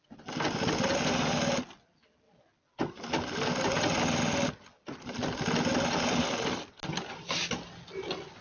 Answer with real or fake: real